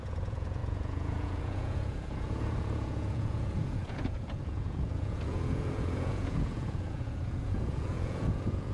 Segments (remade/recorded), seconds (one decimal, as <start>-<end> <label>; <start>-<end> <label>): 0.0-8.7 remade

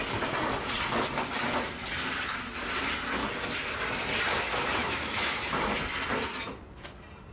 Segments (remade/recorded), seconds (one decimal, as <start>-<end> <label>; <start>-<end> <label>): 0.0-4.8 recorded; 4.8-5.3 remade; 5.3-7.3 recorded

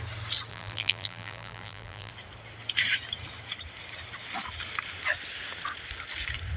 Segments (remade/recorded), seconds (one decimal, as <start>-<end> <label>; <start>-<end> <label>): 0.0-0.5 recorded; 0.5-2.1 remade; 2.1-6.6 recorded

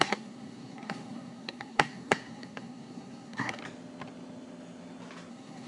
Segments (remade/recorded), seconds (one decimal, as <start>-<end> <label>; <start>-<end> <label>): 0.0-3.6 remade; 3.6-5.3 recorded; 5.3-5.7 remade

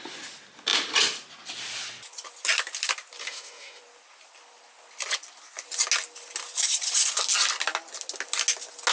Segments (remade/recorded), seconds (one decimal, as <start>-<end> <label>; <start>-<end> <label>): 0.0-3.2 recorded; 3.2-3.8 remade; 3.8-8.9 recorded